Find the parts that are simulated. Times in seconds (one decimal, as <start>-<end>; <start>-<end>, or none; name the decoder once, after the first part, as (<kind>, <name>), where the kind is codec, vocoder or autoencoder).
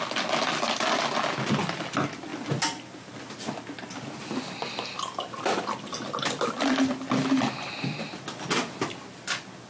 none